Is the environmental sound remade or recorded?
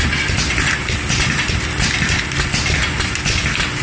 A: recorded